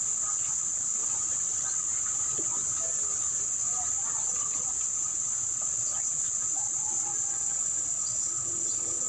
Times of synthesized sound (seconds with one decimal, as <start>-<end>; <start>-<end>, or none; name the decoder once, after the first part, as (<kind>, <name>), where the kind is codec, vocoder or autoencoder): 0.0-1.0 (vocoder, WaveNeXt); 4.0-9.1